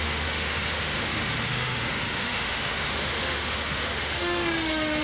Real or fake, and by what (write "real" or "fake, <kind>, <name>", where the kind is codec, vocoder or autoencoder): fake, autoencoder, DAC-VAE